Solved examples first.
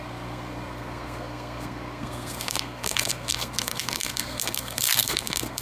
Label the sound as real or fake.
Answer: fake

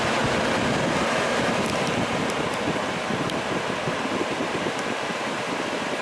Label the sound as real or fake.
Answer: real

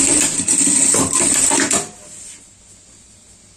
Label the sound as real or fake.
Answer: real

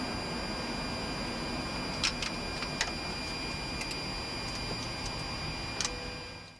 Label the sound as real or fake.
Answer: real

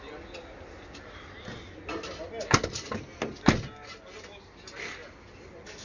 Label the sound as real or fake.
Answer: real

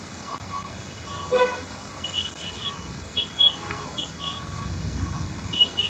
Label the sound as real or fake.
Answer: fake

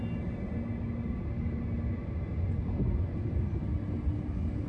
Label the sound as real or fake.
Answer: real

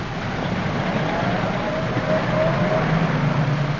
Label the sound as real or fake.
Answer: real